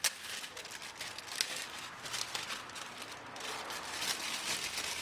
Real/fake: real